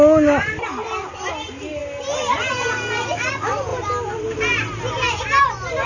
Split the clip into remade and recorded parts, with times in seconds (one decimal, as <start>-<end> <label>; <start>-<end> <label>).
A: 0.0-5.9 recorded